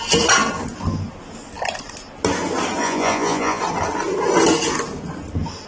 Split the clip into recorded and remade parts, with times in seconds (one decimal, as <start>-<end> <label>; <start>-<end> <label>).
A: 0.0-2.8 recorded; 2.8-3.6 remade; 3.6-5.7 recorded